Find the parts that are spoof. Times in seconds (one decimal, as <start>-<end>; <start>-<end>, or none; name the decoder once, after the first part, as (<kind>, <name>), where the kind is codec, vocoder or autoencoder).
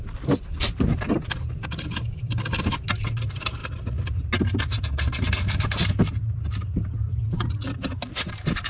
none